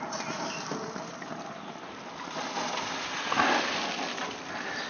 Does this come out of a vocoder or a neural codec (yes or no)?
no